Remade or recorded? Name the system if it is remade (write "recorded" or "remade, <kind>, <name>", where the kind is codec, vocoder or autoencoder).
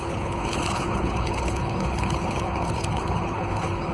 remade, codec, HILCodec